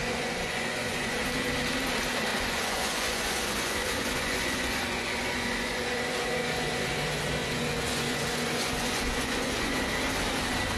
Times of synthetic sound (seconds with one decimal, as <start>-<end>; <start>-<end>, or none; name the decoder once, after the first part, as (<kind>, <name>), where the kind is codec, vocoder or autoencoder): 0.0-1.2 (vocoder, Vocos); 2.3-6.9; 7.4-9.8